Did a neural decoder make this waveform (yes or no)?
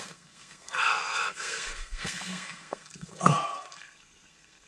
yes